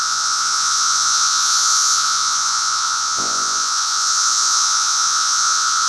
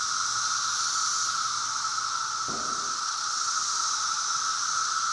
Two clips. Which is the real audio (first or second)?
second